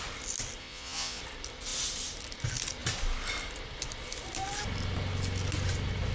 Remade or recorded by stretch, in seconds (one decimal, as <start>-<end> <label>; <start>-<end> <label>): 0.0-0.6 recorded; 0.6-1.2 remade; 1.2-6.1 recorded